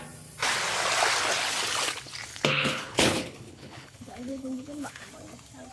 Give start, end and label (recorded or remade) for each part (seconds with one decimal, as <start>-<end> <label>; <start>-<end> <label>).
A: 0.0-2.3 recorded; 2.3-5.1 remade; 5.1-5.7 recorded